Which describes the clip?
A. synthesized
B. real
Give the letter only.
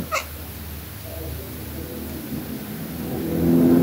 B